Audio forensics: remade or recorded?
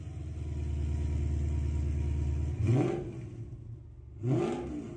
recorded